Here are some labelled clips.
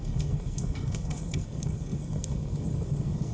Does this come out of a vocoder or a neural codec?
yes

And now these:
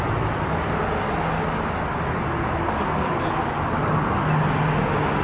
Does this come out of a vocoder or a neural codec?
no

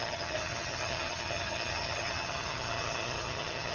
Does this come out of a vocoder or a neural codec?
yes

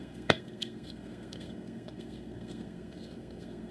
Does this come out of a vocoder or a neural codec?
yes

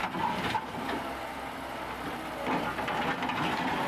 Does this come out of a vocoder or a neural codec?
no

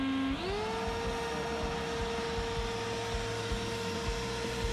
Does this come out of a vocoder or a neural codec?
no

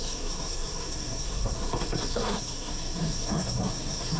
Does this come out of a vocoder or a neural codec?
yes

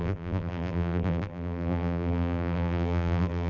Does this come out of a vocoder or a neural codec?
yes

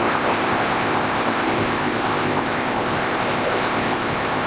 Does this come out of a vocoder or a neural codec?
yes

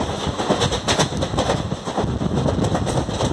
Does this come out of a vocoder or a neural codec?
no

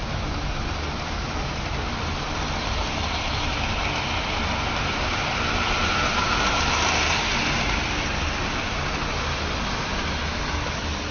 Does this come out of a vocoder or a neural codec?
no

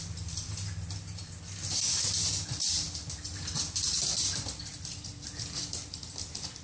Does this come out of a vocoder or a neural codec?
no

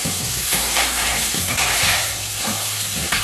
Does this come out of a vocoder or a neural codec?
yes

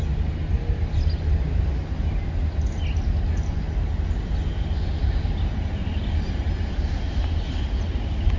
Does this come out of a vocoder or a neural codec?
no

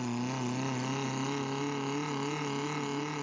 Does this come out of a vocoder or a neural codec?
no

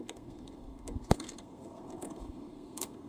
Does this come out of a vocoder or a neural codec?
yes